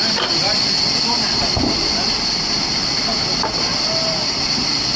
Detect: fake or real real